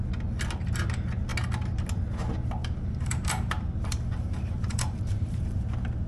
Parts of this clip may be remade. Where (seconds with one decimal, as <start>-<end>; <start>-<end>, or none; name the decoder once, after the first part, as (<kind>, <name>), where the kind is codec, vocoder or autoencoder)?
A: 2.6-6.1 (vocoder, BigVGAN v2)